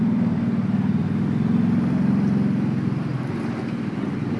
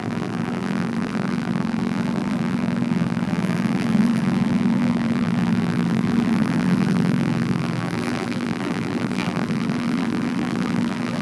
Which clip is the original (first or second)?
first